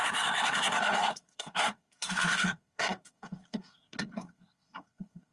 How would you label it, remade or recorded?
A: remade